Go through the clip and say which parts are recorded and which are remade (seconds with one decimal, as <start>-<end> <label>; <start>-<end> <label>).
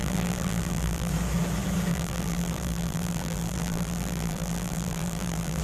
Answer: 0.0-1.1 remade; 1.1-1.9 recorded; 1.9-5.6 remade